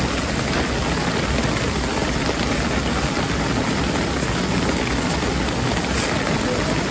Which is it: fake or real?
real